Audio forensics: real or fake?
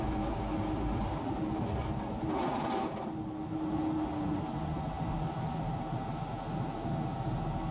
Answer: real